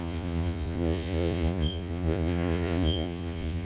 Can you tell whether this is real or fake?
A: fake